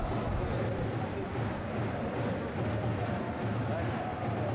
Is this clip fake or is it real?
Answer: real